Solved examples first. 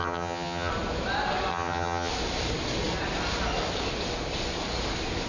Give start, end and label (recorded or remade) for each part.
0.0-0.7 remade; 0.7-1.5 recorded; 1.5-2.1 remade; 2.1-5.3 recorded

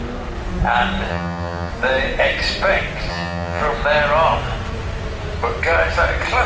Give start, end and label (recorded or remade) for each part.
0.0-1.1 recorded; 1.1-1.7 remade; 1.7-3.1 recorded; 3.1-3.6 remade; 3.6-6.5 recorded